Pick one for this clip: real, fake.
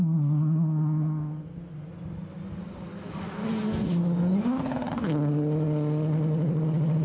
real